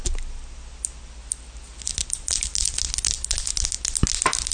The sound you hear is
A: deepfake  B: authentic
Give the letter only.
B